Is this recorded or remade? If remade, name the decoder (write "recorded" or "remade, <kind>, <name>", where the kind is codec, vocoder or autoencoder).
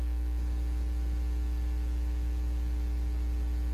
recorded